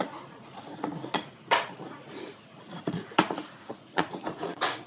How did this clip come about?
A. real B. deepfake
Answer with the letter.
B